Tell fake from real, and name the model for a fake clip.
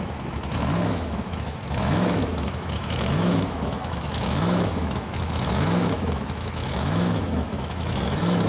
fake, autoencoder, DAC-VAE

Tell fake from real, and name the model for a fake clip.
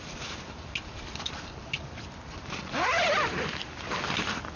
real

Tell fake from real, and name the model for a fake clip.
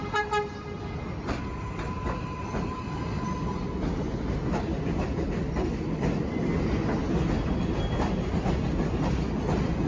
real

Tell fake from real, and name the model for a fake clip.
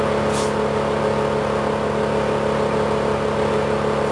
real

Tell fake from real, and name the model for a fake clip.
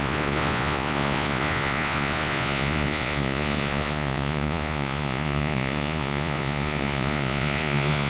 fake, vocoder, Vocos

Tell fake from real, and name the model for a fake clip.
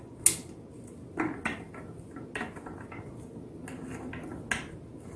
real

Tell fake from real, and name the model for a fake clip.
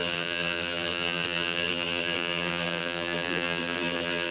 fake, vocoder, BigVGAN v2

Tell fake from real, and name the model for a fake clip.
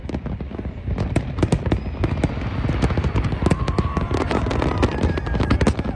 real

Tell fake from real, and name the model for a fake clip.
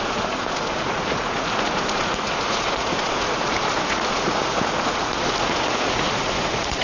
fake, vocoder, Vocos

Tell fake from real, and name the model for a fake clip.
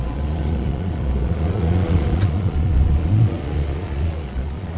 fake, vocoder, Vocos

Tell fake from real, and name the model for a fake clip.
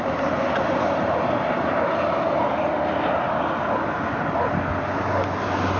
real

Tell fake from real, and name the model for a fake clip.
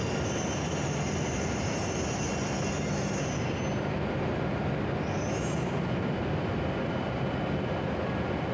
real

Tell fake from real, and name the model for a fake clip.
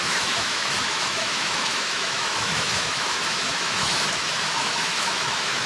fake, autoencoder, DAC-VAE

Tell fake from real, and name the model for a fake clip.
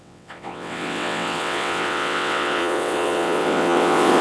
fake, vocoder, WaveNeXt